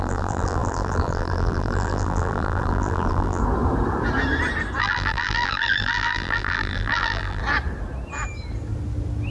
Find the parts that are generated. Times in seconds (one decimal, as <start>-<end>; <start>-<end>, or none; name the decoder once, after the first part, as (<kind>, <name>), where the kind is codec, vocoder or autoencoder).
0.0-3.4 (vocoder, BigVGAN v2); 4.8-7.4